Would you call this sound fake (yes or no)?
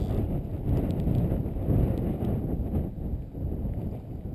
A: no